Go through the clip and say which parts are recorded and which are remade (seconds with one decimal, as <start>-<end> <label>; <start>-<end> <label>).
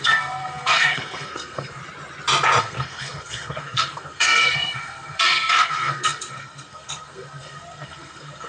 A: 0.0-1.8 remade; 1.8-2.6 recorded; 2.6-8.5 remade